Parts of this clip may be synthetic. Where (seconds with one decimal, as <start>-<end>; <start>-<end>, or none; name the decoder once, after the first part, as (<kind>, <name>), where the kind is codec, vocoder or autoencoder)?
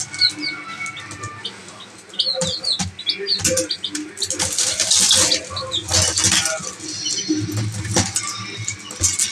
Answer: none